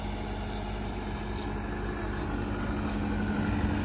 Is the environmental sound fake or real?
real